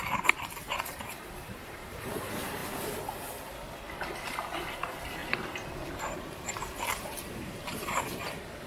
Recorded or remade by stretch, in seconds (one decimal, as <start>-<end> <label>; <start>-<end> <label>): 0.0-2.6 remade; 2.6-4.7 recorded; 4.7-5.2 remade; 5.2-5.7 recorded; 5.7-8.7 remade